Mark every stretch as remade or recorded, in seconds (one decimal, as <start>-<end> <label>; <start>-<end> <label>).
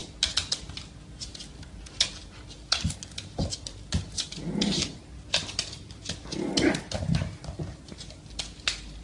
0.0-9.0 recorded